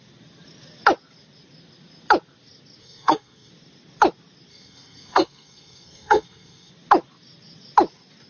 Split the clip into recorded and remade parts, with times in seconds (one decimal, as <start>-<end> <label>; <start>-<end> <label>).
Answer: 0.0-2.8 recorded; 2.8-3.5 remade; 3.5-4.5 recorded; 4.5-6.7 remade; 6.7-8.3 recorded

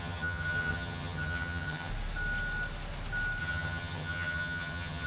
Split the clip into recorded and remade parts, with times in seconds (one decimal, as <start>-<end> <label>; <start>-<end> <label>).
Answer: 0.0-1.9 remade; 1.9-3.4 recorded; 3.4-5.1 remade

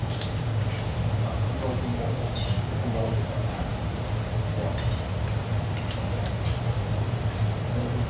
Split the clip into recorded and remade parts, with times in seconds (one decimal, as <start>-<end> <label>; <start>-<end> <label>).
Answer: 0.0-0.6 remade; 0.6-1.9 recorded; 1.9-3.0 remade; 3.0-8.1 recorded

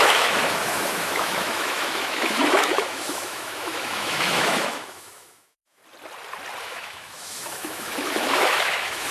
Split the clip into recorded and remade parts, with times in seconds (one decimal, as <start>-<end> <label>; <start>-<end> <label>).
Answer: 0.0-5.8 remade; 5.8-6.6 recorded; 6.6-9.1 remade

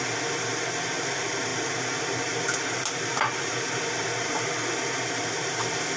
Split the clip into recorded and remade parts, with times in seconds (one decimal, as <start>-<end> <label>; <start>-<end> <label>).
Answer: 0.0-6.0 recorded